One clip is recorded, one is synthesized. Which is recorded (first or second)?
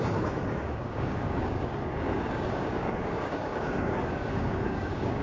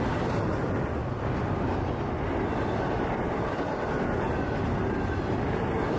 second